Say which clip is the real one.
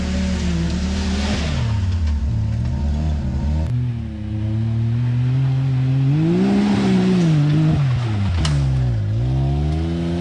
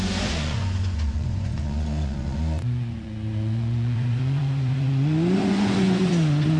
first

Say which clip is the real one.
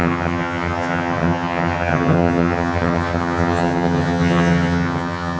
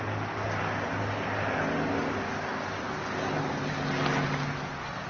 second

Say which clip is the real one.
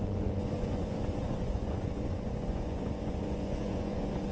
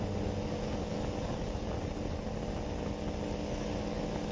second